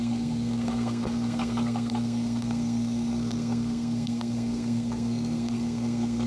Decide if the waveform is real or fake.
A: fake